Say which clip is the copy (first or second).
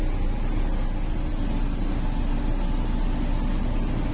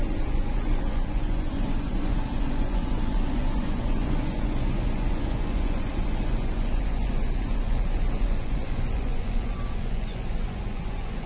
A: second